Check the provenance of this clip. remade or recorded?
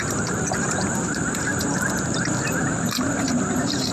remade